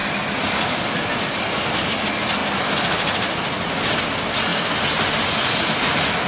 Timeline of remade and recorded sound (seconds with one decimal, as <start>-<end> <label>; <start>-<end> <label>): 0.0-2.4 recorded; 2.4-4.0 remade; 4.0-6.3 recorded